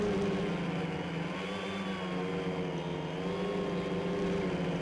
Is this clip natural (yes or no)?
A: yes